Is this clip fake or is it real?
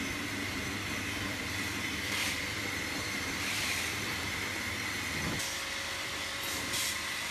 fake